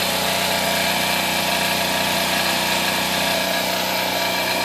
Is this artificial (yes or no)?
no